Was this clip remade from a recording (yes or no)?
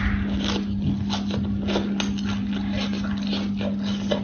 no